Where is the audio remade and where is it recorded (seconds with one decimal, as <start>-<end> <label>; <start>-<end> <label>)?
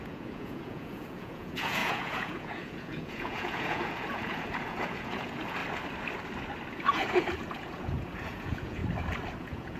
0.0-5.6 remade; 5.6-6.7 recorded; 6.7-8.8 remade; 8.8-9.4 recorded; 9.4-9.8 remade